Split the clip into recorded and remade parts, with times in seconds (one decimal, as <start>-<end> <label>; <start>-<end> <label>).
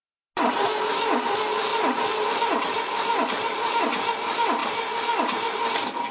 0.0-1.7 recorded; 1.7-3.8 remade; 3.8-4.6 recorded; 4.6-6.1 remade